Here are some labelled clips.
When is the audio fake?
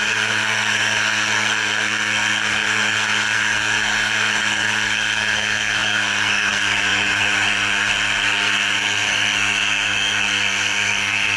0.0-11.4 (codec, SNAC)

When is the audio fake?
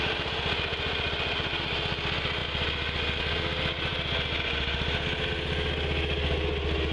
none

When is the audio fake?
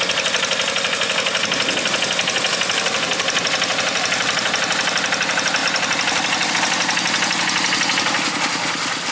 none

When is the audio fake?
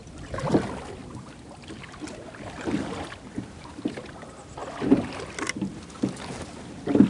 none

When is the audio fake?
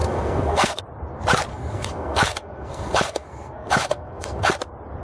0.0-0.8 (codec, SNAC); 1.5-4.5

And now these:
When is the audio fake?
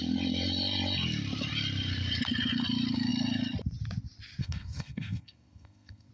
4.4-6.1 (codec, SNAC)